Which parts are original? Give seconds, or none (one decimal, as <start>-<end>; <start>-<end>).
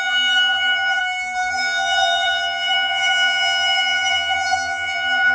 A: 1.0-1.5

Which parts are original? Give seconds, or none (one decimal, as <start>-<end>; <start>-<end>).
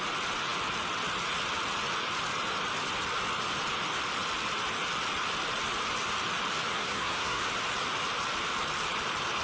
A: 0.0-6.7; 7.5-9.4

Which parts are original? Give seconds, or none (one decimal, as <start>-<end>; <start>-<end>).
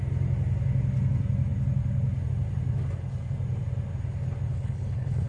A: 0.0-4.5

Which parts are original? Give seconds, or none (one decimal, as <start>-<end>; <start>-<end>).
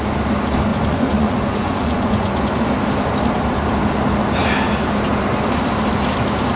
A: 0.0-0.7; 2.5-6.6